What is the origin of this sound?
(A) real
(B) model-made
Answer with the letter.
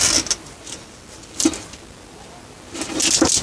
A